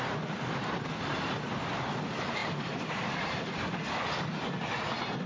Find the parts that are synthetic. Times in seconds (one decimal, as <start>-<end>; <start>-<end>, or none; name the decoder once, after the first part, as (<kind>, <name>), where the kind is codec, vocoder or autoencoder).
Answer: none